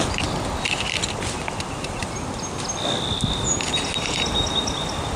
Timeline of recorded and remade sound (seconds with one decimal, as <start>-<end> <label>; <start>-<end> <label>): 0.0-5.2 recorded